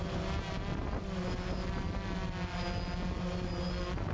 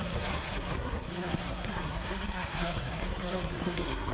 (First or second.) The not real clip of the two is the second